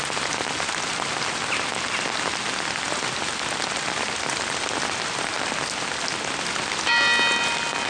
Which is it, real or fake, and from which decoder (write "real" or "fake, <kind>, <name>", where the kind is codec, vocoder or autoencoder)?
real